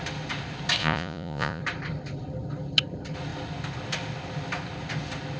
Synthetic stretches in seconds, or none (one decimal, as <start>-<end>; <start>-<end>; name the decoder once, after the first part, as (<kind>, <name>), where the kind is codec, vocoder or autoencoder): 0.8-1.6 (vocoder, Vocos)